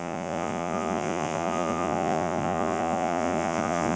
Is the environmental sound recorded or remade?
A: remade